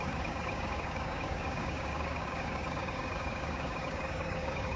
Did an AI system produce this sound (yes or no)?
yes